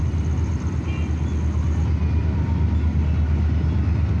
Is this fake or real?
real